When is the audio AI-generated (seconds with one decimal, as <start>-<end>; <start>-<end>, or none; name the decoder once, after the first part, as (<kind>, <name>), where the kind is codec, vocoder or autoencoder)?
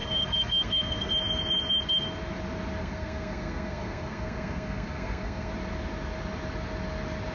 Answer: 0.0-1.1 (codec, SNAC); 2.8-5.5